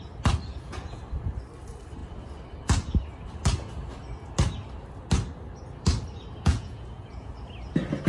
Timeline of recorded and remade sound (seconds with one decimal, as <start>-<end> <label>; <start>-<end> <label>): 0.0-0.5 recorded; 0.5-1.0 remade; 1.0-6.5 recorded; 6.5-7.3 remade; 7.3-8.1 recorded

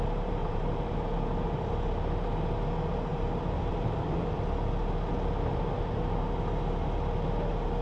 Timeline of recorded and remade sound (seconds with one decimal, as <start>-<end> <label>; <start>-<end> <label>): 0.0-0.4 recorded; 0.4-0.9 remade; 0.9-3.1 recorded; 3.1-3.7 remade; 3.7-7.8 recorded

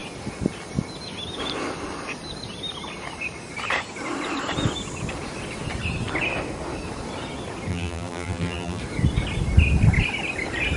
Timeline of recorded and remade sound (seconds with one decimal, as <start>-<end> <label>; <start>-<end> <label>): 0.0-7.7 recorded; 7.7-8.8 remade; 8.8-10.8 recorded